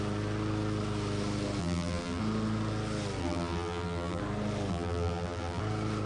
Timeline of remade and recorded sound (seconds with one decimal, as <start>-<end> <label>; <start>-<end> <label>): 0.0-1.6 recorded; 1.6-2.2 remade; 2.2-3.2 recorded; 3.2-4.2 remade; 4.2-4.7 recorded; 4.7-5.6 remade; 5.6-6.1 recorded